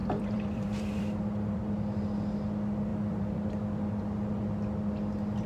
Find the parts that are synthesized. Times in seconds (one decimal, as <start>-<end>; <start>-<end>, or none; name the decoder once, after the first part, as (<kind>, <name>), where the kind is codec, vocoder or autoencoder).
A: 0.0-1.6 (vocoder, BigVGAN v2); 2.9-3.6